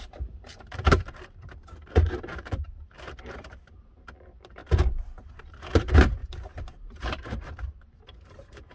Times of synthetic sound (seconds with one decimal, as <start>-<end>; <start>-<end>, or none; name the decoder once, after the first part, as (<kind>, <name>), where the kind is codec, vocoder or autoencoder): 0.0-4.6 (vocoder, BigVGAN v2); 5.4-8.7